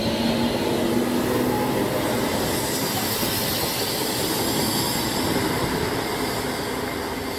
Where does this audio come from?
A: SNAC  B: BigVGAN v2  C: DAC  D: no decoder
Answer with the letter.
D